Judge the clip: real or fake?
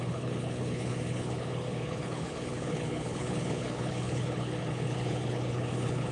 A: fake